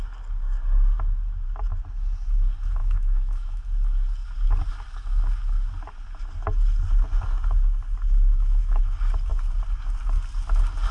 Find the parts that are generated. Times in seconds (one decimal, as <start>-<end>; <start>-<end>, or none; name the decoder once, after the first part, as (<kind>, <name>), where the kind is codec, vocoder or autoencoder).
2.8-3.6 (autoencoder, DAC-VAE); 8.3-8.8